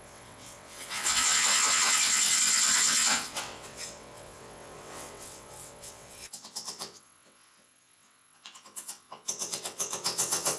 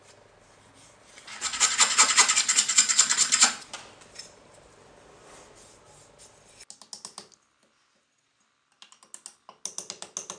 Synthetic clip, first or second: first